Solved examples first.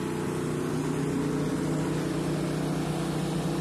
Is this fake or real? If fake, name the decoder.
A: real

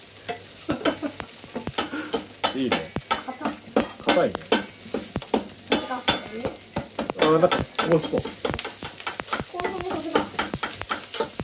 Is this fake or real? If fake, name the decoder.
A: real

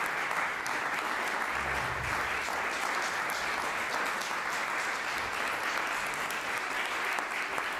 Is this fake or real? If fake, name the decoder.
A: real